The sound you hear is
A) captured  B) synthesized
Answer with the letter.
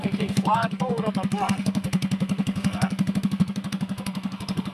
B